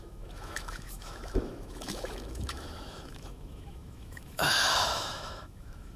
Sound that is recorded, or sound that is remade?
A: remade